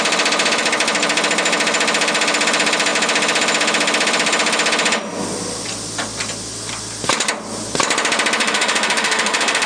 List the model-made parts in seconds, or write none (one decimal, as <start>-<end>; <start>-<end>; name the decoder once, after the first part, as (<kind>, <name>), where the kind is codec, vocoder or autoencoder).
8.4-9.7 (autoencoder, DAC-VAE)